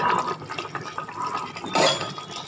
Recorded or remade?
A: recorded